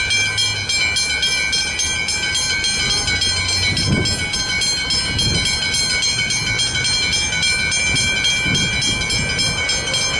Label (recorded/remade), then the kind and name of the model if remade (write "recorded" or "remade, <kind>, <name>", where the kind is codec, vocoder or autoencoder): recorded